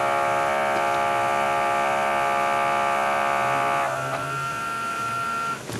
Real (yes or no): yes